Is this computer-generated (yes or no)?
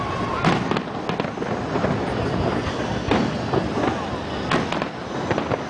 no